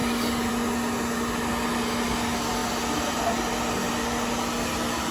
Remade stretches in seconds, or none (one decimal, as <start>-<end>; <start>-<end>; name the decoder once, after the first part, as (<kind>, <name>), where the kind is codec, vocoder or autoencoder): none

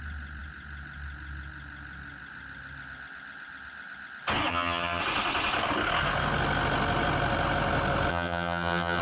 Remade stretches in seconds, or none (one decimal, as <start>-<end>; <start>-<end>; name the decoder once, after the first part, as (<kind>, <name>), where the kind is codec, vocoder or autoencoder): 4.5-5.0 (vocoder, HiFi-GAN); 8.1-9.0

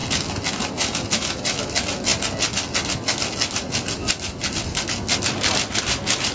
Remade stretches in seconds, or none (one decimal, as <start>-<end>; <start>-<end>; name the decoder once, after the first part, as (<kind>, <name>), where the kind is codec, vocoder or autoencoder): none

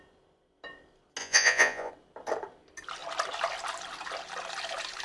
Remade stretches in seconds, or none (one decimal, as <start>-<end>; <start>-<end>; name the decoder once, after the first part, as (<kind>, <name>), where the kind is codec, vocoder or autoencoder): 1.2-1.9 (vocoder, Vocos)

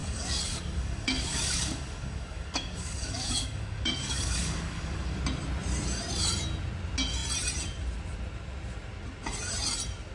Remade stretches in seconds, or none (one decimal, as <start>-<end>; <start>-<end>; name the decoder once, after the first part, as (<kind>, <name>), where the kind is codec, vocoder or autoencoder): 0.0-5.2 (codec, DAC)

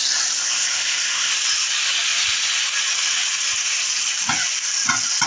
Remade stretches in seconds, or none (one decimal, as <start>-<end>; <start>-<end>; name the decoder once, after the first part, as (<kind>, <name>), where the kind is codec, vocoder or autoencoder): 0.4-1.3 (codec, ZipCodec)

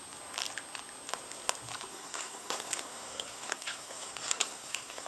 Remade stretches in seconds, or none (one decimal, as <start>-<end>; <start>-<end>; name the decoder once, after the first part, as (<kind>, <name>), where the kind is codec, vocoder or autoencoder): 1.9-5.1 (codec, SNAC)

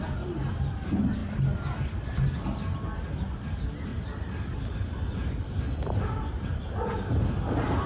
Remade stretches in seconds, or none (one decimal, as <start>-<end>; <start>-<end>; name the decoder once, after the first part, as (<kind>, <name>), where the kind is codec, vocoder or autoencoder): 3.9-6.0 (vocoder, BigVGAN v2)